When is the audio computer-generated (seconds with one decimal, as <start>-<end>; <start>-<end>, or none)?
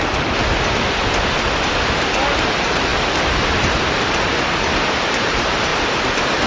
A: none